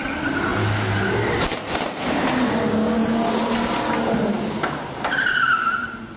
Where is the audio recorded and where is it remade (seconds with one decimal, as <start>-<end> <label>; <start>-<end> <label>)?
0.0-6.2 recorded

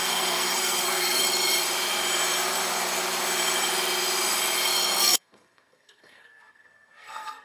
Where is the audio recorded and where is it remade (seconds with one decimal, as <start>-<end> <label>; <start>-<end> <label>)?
0.0-1.2 remade; 1.2-5.0 recorded; 5.0-7.4 remade

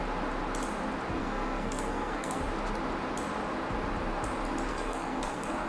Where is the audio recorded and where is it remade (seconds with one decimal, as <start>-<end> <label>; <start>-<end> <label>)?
0.0-1.2 recorded; 1.2-2.4 remade; 2.4-4.7 recorded; 4.7-5.7 remade

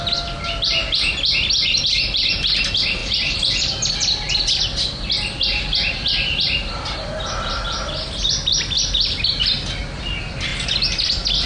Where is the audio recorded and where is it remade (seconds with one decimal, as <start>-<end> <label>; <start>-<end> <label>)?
0.0-11.5 recorded

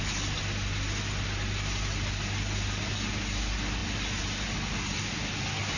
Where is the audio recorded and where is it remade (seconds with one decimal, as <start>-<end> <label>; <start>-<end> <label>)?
0.0-5.8 recorded

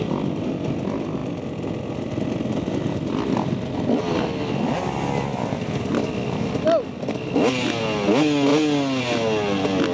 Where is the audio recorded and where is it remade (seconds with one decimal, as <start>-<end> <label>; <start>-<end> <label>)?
0.0-9.9 recorded

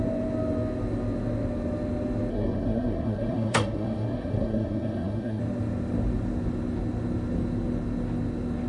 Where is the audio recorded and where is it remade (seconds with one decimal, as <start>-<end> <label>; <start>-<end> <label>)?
0.0-2.3 recorded; 2.3-5.4 remade; 5.4-8.7 recorded

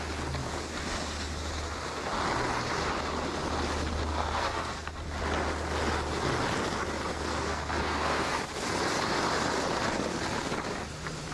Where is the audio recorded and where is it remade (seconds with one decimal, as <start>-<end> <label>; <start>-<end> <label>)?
0.0-4.1 recorded; 4.1-4.9 remade; 4.9-7.1 recorded; 7.1-8.4 remade; 8.4-11.3 recorded